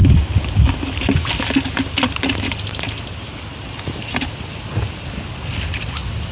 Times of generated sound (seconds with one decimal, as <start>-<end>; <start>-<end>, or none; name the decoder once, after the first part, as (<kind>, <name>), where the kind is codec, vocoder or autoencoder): 3.5-4.3 (vocoder, BigVGAN v2)